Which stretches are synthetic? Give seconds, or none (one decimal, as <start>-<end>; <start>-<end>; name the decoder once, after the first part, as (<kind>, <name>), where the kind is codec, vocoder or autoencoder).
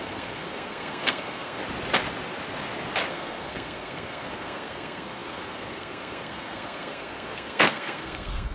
0.0-1.6 (codec, SNAC); 3.1-8.5